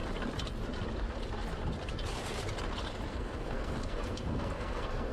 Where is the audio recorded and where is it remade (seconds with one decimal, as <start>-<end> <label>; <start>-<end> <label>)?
0.0-3.1 recorded; 3.1-5.1 remade